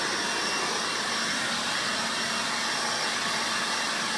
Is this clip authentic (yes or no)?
yes